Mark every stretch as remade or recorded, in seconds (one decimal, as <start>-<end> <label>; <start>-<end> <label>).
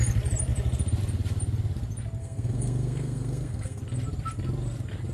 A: 0.0-2.2 recorded; 2.2-3.8 remade; 3.8-5.1 recorded